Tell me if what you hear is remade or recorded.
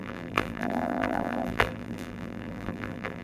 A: remade